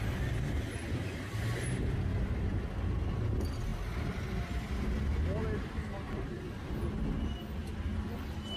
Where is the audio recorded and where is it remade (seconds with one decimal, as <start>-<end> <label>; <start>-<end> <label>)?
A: 0.0-2.1 recorded; 2.1-2.6 remade; 2.6-8.6 recorded